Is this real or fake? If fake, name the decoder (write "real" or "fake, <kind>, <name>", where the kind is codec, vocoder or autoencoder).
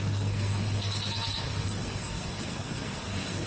fake, codec, SNAC